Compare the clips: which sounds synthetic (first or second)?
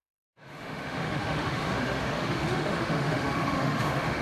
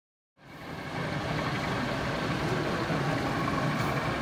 first